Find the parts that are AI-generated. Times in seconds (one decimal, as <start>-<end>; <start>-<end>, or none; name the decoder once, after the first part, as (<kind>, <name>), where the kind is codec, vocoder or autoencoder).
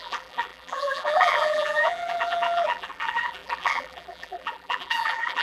0.0-5.4 (vocoder, BigVGAN v2)